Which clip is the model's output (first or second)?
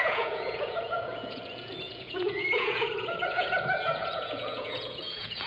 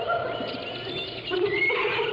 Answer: first